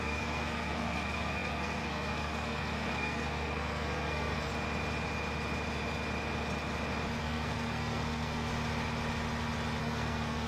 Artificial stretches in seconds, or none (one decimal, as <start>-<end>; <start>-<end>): 0.0-4.5; 7.2-8.5; 9.8-10.5